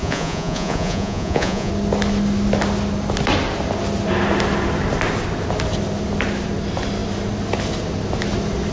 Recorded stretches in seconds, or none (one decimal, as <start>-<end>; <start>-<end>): 1.7-8.7